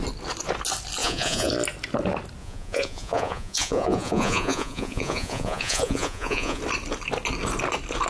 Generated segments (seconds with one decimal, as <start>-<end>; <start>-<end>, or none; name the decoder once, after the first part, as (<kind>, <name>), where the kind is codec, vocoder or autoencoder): 1.0-1.5 (vocoder, Vocos); 2.4-6.6